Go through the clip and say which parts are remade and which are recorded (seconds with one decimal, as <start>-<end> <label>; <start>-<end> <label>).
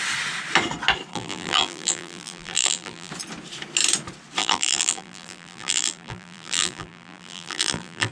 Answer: 0.0-1.1 recorded; 1.1-3.1 remade; 3.1-4.4 recorded; 4.4-8.1 remade